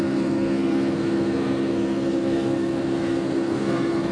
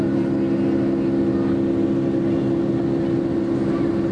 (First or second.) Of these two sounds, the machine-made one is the first